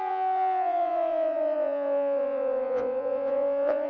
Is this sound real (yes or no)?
no